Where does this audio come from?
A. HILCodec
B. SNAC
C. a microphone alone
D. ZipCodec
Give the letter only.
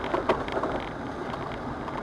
C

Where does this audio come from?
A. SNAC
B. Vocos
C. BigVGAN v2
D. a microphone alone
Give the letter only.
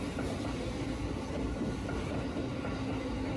D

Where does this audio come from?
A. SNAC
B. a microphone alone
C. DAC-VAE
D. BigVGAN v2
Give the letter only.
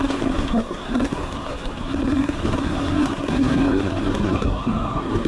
A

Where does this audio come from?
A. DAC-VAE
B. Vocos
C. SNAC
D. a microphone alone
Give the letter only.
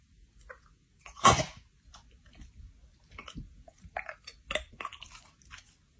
D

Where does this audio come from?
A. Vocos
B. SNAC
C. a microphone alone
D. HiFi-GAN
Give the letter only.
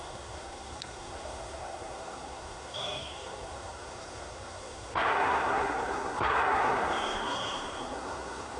B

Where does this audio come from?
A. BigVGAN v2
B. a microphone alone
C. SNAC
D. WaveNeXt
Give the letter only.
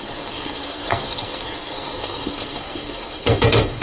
C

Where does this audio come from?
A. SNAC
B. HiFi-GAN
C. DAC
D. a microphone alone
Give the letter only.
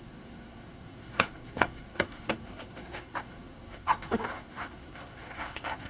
A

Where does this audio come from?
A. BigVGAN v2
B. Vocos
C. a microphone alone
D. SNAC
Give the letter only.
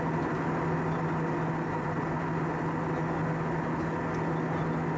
C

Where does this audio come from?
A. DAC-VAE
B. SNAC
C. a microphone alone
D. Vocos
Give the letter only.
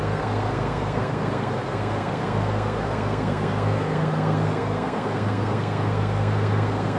B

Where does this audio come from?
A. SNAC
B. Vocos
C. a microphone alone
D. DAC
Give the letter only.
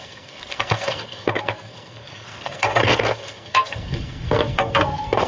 A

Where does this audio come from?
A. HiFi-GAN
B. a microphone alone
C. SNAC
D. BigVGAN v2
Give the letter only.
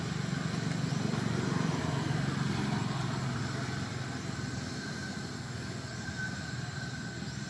B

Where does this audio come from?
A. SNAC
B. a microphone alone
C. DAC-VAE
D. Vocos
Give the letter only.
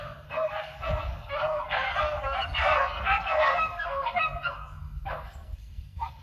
A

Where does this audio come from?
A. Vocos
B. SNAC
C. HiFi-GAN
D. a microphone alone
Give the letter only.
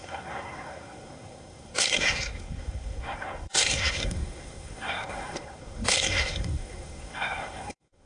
B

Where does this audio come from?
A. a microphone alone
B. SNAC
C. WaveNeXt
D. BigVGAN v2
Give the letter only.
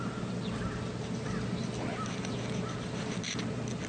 A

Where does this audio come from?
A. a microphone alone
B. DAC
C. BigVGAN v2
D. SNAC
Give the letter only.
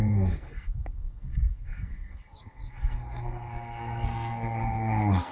D